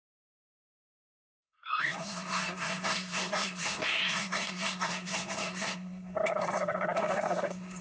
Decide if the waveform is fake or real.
fake